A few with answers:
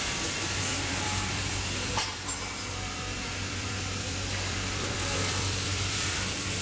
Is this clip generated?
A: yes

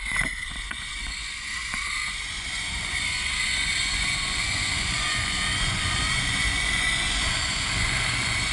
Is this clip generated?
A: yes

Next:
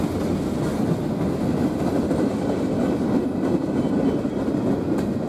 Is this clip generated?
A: no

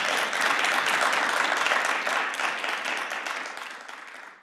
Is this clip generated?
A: no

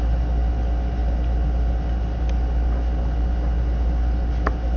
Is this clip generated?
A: no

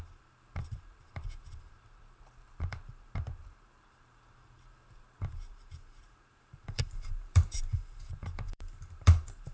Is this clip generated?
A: yes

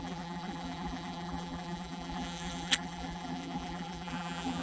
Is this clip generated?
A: yes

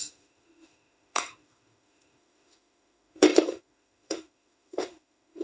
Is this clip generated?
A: yes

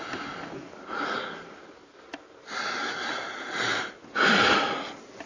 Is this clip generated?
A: no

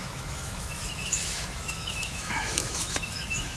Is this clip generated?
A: yes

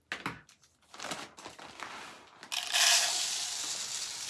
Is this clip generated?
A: no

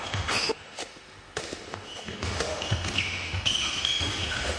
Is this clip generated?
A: yes